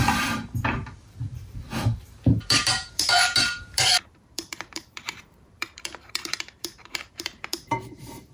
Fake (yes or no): yes